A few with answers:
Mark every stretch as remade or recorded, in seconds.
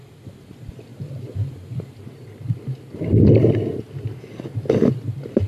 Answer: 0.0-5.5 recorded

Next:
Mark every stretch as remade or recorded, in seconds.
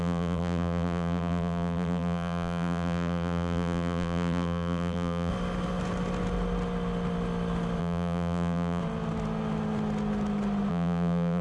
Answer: 0.0-5.3 remade; 5.3-7.8 recorded; 7.8-8.8 remade; 8.8-10.7 recorded; 10.7-11.4 remade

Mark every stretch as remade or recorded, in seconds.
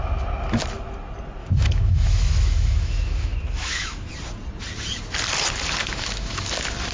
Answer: 0.0-1.4 recorded; 1.4-4.1 remade; 4.1-5.8 recorded; 5.8-6.5 remade; 6.5-6.9 recorded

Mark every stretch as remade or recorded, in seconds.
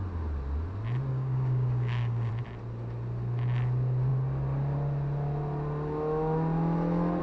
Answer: 0.0-1.1 recorded; 1.1-2.3 remade; 2.3-7.2 recorded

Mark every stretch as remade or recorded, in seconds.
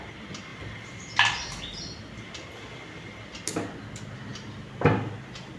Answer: 0.0-5.6 recorded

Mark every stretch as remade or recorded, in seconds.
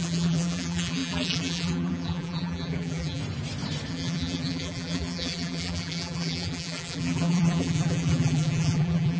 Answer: 0.0-3.2 remade; 3.2-3.9 recorded; 3.9-9.2 remade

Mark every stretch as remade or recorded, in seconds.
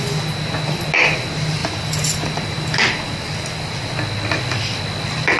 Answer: 0.0-5.4 recorded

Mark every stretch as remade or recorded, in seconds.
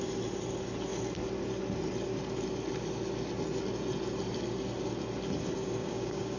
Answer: 0.0-5.8 recorded; 5.8-6.4 remade